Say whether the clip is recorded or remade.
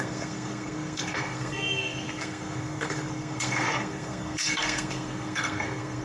remade